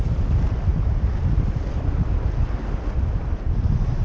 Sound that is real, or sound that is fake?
real